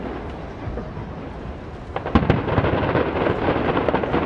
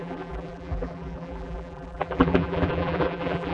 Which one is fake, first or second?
second